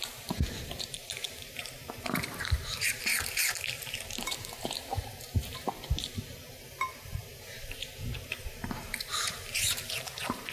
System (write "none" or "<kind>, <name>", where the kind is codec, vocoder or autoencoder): vocoder, BigVGAN v2